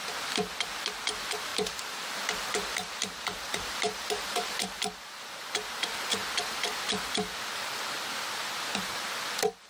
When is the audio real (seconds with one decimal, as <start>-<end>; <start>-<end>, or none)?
0.0-1.5; 4.8-9.7